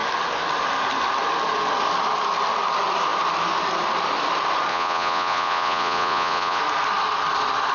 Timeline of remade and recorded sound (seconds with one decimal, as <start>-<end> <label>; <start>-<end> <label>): 0.0-4.7 recorded; 4.7-6.6 remade; 6.6-7.7 recorded